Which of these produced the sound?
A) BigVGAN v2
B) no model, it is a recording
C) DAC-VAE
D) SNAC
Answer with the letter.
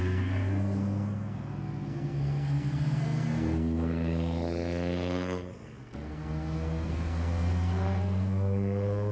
D